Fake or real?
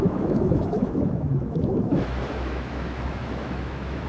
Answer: fake